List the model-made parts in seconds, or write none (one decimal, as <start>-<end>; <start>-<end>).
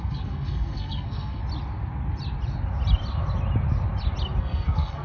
0.0-1.4; 4.4-5.0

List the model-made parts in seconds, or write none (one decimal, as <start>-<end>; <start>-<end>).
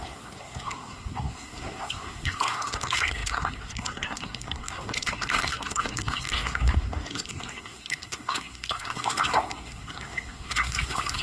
0.0-11.2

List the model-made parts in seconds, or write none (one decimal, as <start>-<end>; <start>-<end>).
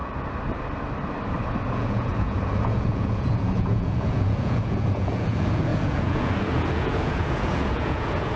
1.7-8.4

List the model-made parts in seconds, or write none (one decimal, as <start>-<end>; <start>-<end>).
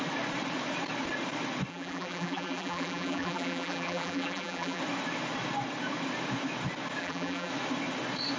1.7-4.8; 7.0-7.5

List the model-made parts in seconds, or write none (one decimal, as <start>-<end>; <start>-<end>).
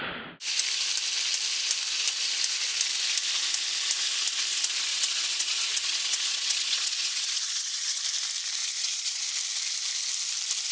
4.9-8.0; 8.6-9.2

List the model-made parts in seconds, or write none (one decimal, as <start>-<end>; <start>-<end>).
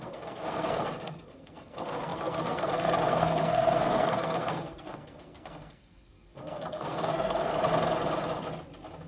0.0-7.5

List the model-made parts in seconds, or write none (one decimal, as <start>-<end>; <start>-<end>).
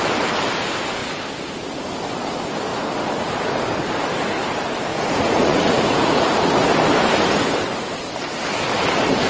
4.9-6.5